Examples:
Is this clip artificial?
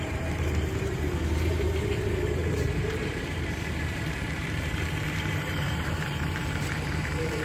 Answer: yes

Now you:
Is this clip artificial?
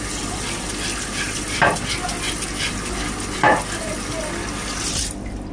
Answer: no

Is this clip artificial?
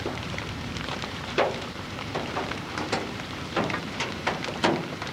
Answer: yes